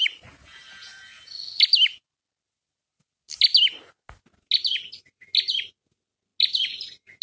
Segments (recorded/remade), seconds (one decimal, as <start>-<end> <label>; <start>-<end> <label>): 0.0-7.2 recorded